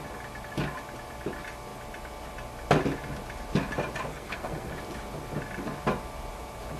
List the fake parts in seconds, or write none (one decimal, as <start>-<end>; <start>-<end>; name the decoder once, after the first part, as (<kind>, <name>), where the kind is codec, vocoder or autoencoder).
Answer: 4.1-4.7 (codec, SNAC)

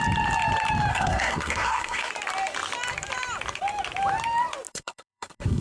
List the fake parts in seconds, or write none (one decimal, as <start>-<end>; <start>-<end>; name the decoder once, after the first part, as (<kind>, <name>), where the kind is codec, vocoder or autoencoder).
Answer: 0.9-2.1 (codec, SNAC); 4.7-5.6